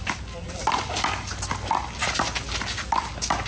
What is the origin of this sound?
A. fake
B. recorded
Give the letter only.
B